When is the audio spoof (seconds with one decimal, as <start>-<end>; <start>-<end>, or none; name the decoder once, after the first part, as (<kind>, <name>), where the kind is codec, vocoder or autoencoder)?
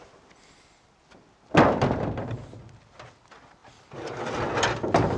none